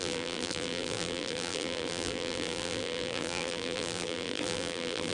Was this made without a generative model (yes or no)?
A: no